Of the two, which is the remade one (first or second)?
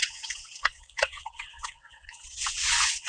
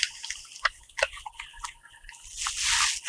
first